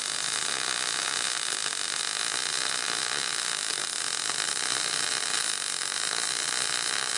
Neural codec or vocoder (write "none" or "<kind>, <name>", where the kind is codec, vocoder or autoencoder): none